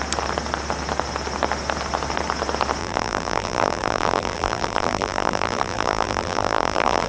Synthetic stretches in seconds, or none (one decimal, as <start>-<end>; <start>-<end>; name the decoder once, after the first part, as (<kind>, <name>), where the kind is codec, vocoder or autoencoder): 2.8-7.1 (vocoder, BigVGAN v2)